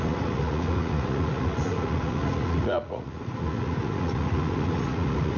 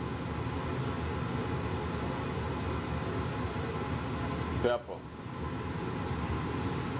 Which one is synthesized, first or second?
first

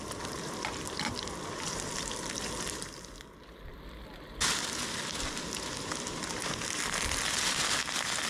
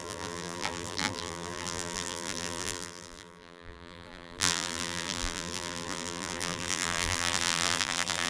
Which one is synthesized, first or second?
second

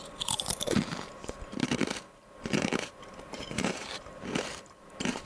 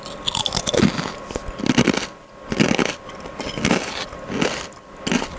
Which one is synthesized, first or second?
first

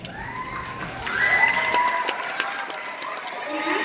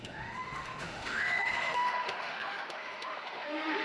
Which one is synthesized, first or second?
second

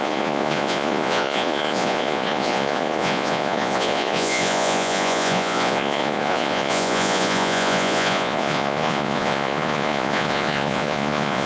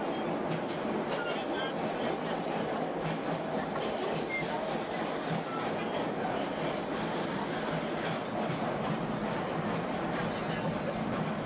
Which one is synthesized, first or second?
first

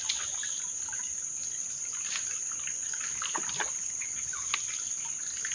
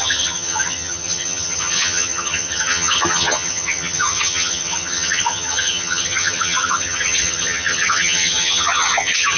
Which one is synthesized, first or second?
second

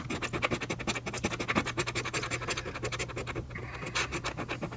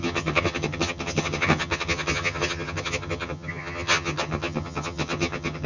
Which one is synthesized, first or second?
second